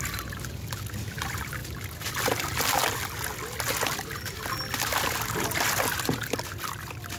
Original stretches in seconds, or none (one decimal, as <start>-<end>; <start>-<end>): 0.0-7.2